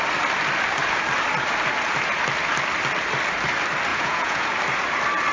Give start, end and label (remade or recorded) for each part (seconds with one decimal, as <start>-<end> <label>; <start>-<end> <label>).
0.0-3.9 recorded; 3.9-4.5 remade; 4.5-5.3 recorded